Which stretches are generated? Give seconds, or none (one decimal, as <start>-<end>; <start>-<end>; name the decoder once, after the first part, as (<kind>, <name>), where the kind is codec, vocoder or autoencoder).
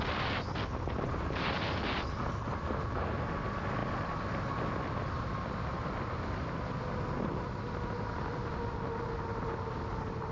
none